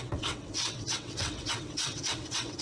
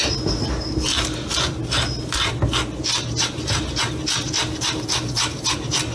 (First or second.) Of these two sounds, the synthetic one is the first